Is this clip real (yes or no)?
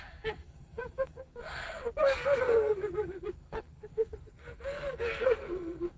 no